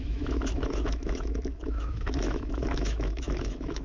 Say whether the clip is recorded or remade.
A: remade